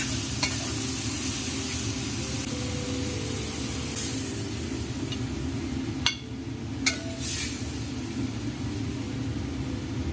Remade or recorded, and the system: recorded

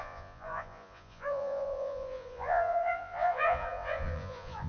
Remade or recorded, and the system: remade, vocoder, Vocos